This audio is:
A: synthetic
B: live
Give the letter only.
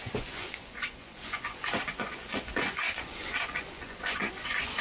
A